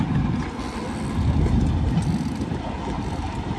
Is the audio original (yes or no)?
yes